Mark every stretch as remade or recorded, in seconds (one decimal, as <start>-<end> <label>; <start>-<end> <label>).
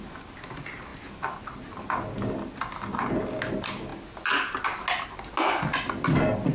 0.0-0.9 recorded; 0.9-1.4 remade; 1.4-6.5 recorded